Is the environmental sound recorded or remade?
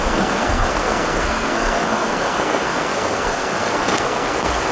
remade